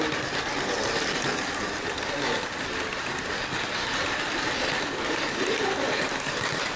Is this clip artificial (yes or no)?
no